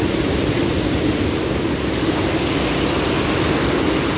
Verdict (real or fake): real